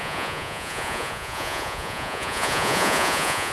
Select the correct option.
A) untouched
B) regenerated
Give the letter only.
B